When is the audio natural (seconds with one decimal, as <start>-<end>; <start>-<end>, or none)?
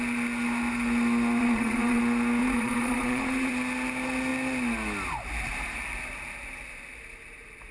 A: 0.0-1.4; 2.0-2.4; 3.5-7.7